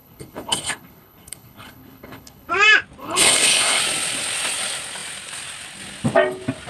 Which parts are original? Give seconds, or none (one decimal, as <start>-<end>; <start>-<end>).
2.5-3.0; 3.8-6.7